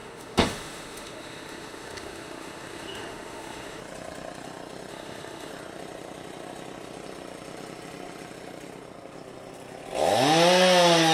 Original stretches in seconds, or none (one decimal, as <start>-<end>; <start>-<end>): 3.8-4.9; 5.5-11.1